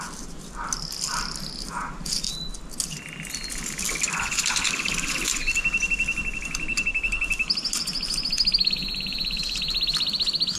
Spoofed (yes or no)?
no